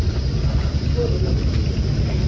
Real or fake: real